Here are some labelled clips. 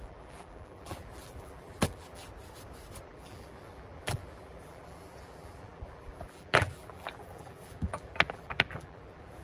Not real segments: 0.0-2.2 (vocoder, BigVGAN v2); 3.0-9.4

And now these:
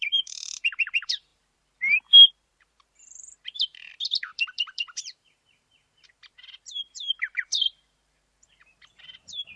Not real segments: 0.0-9.6 (vocoder, BigVGAN v2)